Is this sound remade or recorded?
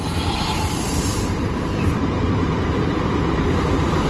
remade